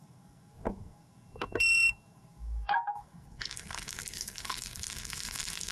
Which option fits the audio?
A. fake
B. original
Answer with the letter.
A